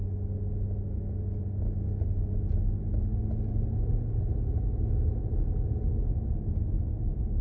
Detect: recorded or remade recorded